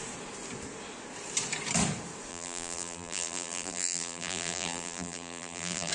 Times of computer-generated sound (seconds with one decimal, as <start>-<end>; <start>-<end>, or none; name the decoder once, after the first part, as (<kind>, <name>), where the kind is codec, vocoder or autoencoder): 2.3-5.9 (vocoder, BigVGAN v2)